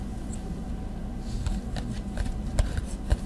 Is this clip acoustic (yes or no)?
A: yes